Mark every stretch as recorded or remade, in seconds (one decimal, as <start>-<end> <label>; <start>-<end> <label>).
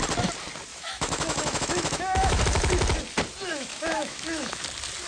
0.0-0.7 recorded; 0.7-2.4 remade; 2.4-3.5 recorded; 3.5-4.5 remade; 4.5-5.1 recorded